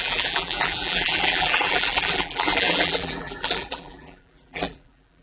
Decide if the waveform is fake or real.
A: fake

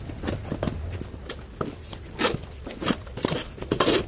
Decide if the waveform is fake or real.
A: real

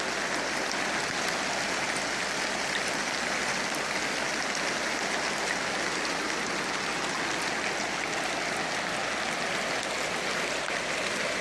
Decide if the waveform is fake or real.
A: real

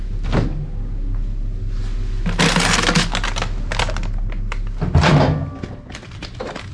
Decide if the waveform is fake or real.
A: real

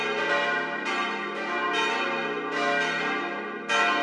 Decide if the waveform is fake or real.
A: real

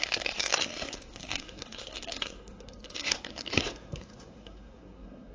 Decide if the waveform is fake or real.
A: fake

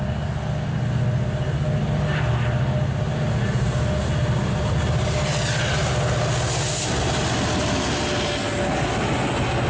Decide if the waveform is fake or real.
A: real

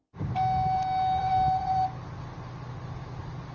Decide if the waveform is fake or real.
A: real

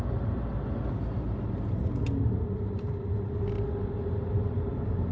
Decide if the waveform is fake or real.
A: real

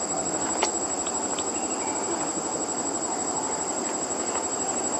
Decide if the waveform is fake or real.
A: real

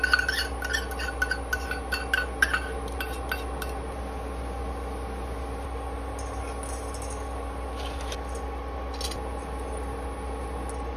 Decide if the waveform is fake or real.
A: real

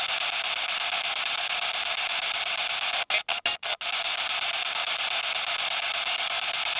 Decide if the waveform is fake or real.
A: real